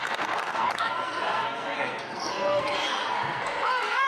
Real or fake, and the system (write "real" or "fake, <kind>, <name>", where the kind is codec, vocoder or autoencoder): fake, codec, SNAC